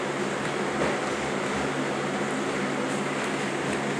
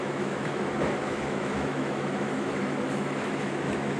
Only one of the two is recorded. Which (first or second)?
first